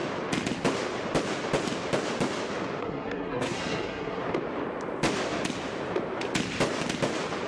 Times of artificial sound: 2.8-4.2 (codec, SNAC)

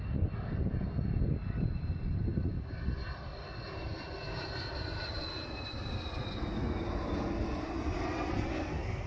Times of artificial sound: 8.5-9.1 (codec, SNAC)

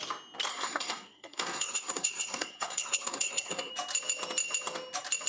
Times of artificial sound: 0.5-3.7 (codec, SNAC)

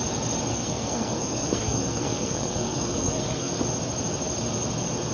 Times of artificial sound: 0.5-3.6 (codec, SNAC)

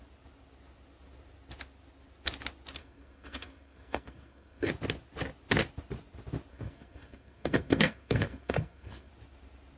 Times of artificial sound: 2.8-4.7 (codec, SNAC); 6.5-9.1

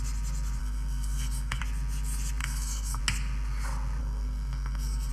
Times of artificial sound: 0.6-1.6 (codec, SNAC); 2.4-3.0; 4.0-5.1